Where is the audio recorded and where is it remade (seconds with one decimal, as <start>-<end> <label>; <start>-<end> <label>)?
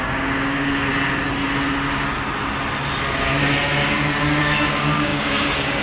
0.0-0.9 remade; 0.9-4.4 recorded; 4.4-5.8 remade